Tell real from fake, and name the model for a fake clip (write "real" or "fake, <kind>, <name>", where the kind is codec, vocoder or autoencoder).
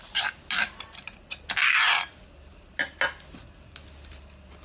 real